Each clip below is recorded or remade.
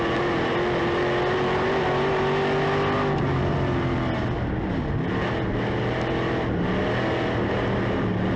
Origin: recorded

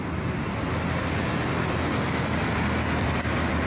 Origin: recorded